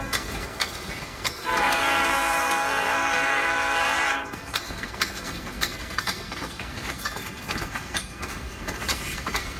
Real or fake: fake